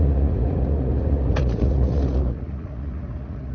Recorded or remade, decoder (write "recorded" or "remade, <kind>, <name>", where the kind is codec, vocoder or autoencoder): remade, vocoder, Vocos